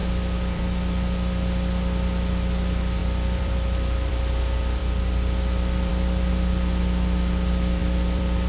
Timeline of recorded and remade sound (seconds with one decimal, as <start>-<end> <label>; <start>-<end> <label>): 0.0-0.6 remade; 0.6-3.0 recorded; 3.0-4.1 remade; 4.1-7.8 recorded; 7.8-8.5 remade